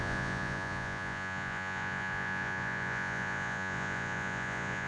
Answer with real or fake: fake